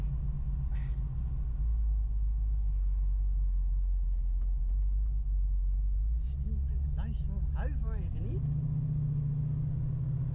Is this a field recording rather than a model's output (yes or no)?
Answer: yes